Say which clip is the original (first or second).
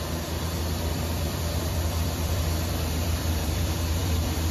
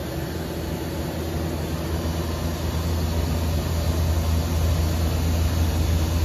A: second